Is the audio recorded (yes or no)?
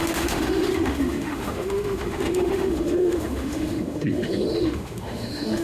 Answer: no